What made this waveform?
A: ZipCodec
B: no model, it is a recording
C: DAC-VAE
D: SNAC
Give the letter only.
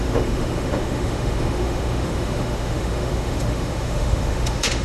C